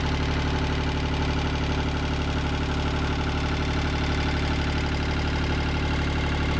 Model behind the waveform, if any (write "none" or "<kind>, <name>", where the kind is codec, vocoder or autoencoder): none